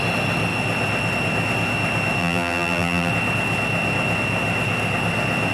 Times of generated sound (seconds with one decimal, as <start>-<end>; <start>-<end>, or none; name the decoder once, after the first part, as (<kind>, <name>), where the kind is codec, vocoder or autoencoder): 2.2-3.1 (vocoder, BigVGAN v2)